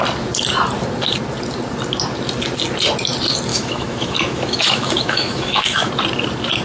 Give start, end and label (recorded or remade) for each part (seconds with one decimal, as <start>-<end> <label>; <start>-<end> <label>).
0.0-3.5 recorded; 3.5-5.9 remade; 5.9-6.6 recorded